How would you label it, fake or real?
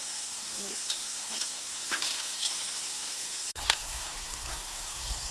fake